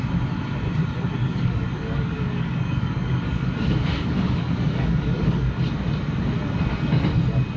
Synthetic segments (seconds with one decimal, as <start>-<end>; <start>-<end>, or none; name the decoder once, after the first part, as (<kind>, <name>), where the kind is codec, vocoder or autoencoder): 1.2-5.5 (codec, DAC)